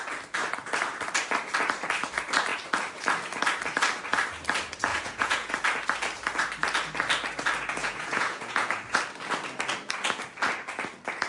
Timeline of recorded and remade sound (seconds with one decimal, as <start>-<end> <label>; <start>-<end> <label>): 0.0-4.9 recorded; 4.9-5.5 remade; 5.5-7.8 recorded; 7.8-8.7 remade; 8.7-11.3 recorded